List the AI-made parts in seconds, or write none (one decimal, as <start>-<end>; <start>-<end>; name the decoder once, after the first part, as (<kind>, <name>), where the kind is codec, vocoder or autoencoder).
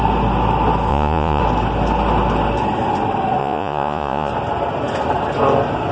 0.9-1.4 (vocoder, Vocos); 3.4-4.3